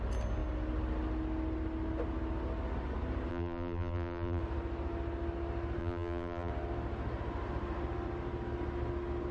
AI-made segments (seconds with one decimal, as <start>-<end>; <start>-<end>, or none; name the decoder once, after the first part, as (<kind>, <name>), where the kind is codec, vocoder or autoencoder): 3.3-4.4 (vocoder, BigVGAN v2); 5.8-6.5

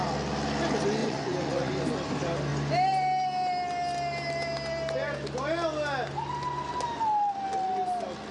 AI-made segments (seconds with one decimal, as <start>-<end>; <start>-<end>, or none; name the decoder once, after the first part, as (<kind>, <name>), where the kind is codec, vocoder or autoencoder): 1.0-1.7 (vocoder, Vocos)